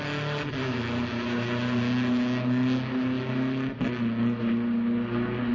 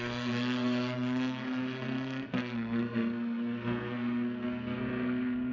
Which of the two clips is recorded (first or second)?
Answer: first